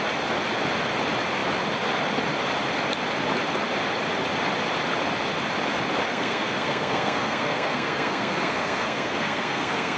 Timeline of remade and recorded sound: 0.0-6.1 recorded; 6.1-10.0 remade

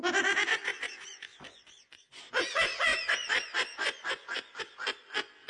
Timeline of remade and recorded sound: 0.0-0.5 recorded; 0.5-2.2 remade; 2.2-2.9 recorded; 2.9-4.6 remade; 4.6-5.5 recorded

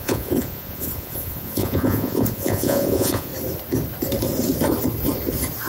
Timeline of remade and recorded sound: 0.0-3.3 remade; 3.3-5.7 recorded

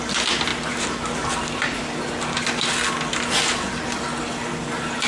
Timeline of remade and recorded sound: 0.0-5.1 recorded

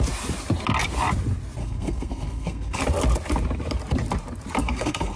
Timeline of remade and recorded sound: 0.0-1.6 recorded; 1.6-2.8 remade; 2.8-4.6 recorded; 4.6-5.2 remade